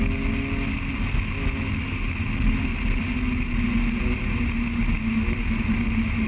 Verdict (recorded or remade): recorded